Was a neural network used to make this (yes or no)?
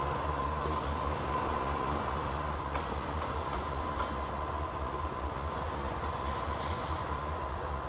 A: yes